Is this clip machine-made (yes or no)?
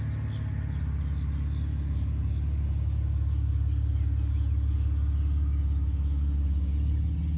no